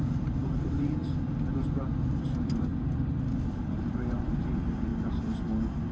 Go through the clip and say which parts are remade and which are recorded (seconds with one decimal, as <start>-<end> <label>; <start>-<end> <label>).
0.0-1.0 remade; 1.0-2.2 recorded; 2.2-2.7 remade; 2.7-3.2 recorded; 3.2-4.9 remade; 4.9-5.9 recorded